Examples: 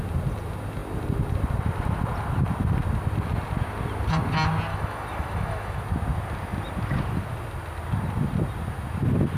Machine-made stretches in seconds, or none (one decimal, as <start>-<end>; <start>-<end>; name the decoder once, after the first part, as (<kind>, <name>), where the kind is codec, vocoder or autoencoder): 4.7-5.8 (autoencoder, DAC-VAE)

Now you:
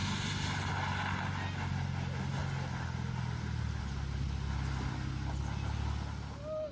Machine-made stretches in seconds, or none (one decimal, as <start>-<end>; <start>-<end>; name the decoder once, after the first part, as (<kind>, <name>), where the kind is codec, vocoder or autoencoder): none

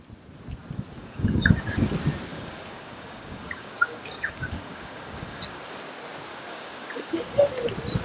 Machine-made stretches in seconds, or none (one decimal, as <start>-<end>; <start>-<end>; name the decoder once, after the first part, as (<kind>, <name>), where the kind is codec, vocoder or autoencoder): 1.0-1.9 (codec, DAC); 2.3-5.6; 6.3-7.5